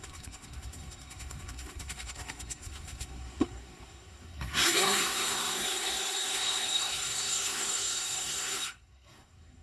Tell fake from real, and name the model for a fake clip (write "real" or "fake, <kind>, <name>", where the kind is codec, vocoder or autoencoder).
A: fake, codec, SNAC